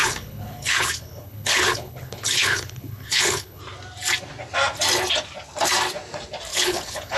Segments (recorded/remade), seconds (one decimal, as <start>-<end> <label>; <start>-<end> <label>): 0.0-3.6 remade; 3.6-6.5 recorded; 6.5-7.2 remade